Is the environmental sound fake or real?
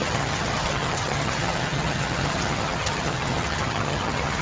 fake